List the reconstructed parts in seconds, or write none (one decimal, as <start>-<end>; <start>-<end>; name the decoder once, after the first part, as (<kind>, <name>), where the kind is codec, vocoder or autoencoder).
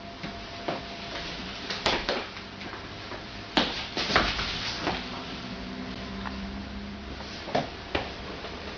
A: none